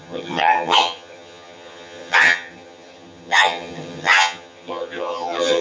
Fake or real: fake